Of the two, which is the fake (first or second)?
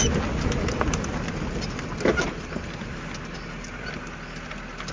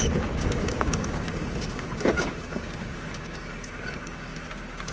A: second